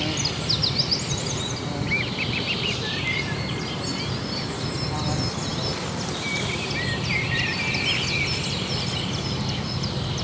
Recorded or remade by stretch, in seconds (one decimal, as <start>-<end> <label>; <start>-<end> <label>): 0.0-10.2 recorded